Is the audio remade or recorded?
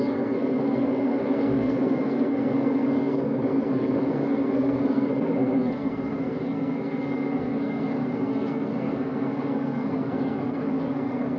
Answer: remade